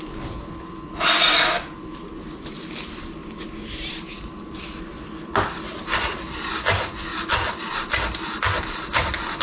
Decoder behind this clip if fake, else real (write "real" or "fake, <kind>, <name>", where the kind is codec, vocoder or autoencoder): real